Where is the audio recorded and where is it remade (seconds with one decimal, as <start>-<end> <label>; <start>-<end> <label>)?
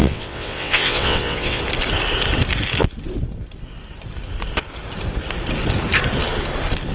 0.0-1.6 remade; 1.6-6.9 recorded